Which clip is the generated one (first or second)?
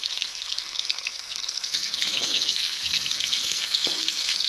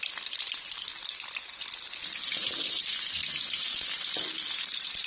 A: first